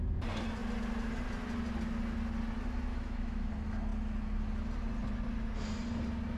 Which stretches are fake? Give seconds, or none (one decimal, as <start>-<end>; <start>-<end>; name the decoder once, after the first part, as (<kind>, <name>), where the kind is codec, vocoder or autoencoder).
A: 2.9-3.5 (autoencoder, DAC-VAE)